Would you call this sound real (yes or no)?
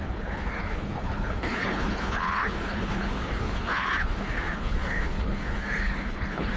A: no